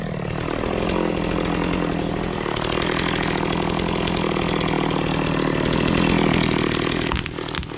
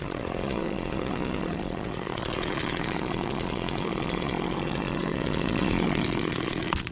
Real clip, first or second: first